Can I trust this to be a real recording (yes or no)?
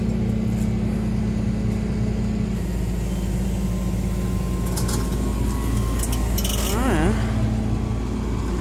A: yes